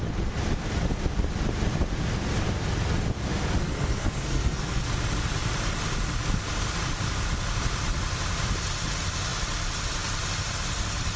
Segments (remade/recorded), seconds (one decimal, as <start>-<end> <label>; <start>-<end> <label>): 0.0-3.6 recorded; 3.6-4.9 remade; 4.9-11.2 recorded